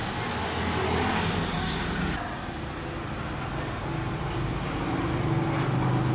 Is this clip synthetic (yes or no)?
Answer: no